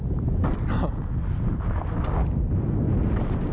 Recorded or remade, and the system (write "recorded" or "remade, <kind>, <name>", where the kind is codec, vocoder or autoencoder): recorded